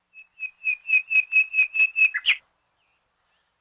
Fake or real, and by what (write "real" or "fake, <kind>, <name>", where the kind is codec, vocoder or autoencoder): real